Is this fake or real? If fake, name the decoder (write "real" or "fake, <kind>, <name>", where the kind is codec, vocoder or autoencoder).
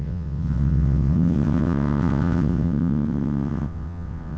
fake, vocoder, WaveNeXt